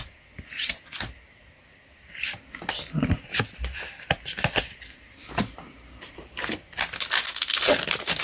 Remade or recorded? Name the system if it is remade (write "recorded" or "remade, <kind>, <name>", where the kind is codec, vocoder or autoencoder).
recorded